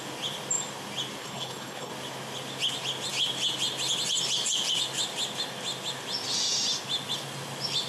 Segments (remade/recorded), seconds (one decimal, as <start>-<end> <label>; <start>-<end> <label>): 0.0-1.2 recorded; 1.2-1.9 remade; 1.9-7.9 recorded